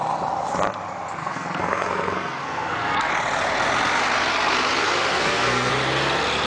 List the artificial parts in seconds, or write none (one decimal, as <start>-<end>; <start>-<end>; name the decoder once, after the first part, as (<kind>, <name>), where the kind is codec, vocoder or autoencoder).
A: 1.2-3.1 (codec, SNAC); 5.1-5.7